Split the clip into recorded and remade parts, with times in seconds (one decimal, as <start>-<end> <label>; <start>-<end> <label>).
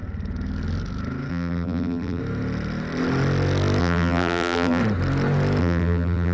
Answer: 0.0-1.3 recorded; 1.3-2.2 remade; 2.2-3.8 recorded; 3.8-4.8 remade; 4.8-5.6 recorded; 5.6-6.3 remade